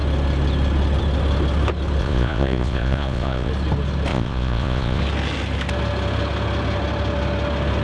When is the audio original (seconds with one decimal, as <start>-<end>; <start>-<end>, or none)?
0.0-2.0; 3.5-4.1; 5.0-7.8